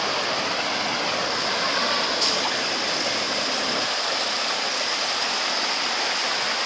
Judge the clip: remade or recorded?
recorded